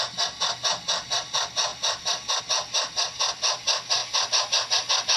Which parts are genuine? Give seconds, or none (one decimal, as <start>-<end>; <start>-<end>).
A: 0.0-5.2